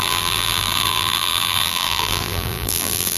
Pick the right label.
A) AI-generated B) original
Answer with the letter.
A